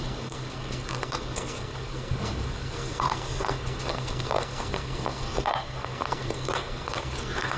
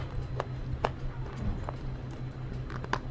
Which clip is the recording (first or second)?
second